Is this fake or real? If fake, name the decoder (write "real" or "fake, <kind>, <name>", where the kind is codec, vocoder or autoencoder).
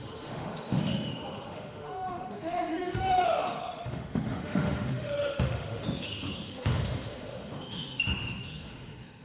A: fake, autoencoder, DAC-VAE